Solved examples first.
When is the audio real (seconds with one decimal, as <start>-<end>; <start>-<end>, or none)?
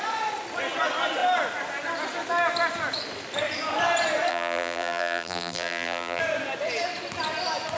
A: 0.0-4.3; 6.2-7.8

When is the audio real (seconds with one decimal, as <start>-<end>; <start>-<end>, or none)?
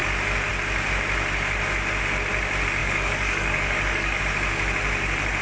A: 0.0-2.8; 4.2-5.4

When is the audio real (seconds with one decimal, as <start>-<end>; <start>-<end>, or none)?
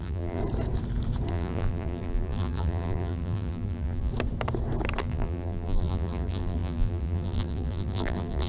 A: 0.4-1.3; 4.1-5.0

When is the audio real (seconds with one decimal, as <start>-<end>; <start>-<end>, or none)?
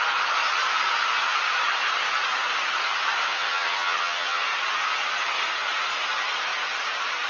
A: 0.0-3.3; 4.4-7.3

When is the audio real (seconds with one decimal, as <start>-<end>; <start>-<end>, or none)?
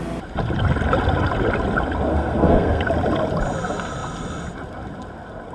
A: 0.0-2.1; 2.8-5.5